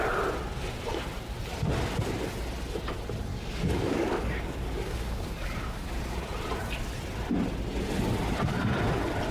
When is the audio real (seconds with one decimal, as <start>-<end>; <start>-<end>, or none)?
0.0-3.3; 6.0-9.3